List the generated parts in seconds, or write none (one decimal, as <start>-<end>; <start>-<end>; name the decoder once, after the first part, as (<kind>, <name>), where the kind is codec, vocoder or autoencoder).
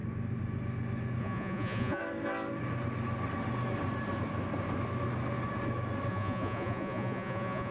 1.2-2.0 (vocoder, Vocos); 6.1-7.7